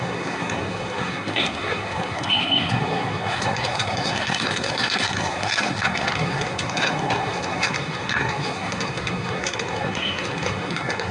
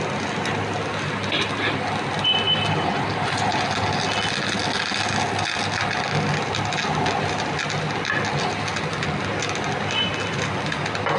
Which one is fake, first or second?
first